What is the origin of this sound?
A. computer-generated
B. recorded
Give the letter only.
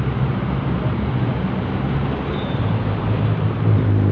A